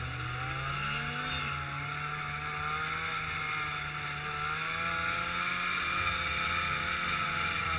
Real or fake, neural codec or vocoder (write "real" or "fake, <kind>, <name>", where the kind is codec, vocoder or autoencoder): real